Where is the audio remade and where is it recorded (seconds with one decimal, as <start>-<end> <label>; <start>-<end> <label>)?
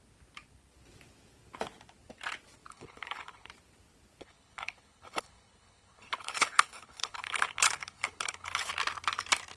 0.0-2.7 recorded; 2.7-3.5 remade; 3.5-4.2 recorded; 4.2-8.7 remade; 8.7-9.6 recorded